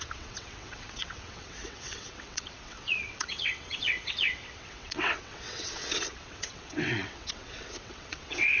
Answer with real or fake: fake